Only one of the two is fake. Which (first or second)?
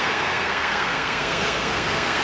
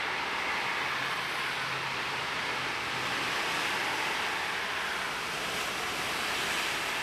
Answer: first